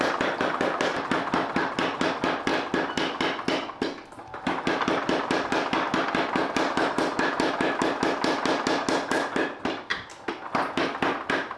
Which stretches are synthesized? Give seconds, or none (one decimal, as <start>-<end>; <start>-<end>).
none